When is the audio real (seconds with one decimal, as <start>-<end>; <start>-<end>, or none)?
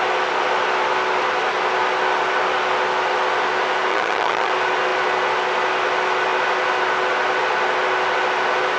0.0-3.9; 4.5-8.8